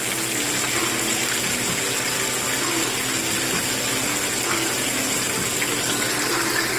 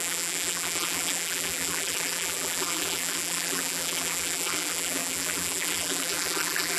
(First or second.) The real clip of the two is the first